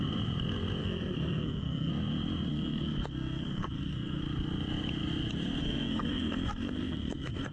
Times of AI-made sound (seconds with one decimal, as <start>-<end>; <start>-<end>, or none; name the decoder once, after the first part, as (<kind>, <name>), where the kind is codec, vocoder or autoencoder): 0.8-1.9 (codec, SNAC); 2.5-4.2; 5.6-7.5